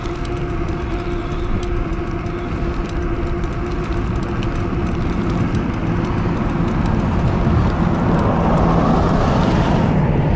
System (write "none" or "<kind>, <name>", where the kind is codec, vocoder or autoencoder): none